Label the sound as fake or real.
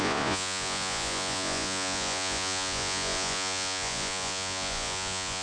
fake